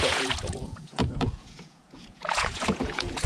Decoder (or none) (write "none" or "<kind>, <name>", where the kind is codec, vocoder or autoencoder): vocoder, Vocos